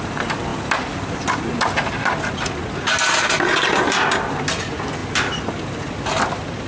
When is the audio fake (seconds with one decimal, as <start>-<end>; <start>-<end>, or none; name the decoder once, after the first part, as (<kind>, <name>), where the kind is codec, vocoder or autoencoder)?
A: none

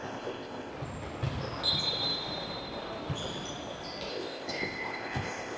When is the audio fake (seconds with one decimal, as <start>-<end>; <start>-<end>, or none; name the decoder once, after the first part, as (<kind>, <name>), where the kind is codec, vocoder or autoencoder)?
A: 0.0-0.7 (codec, ZipCodec); 4.1-5.6